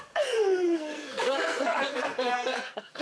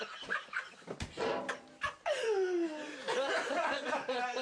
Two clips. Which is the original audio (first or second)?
second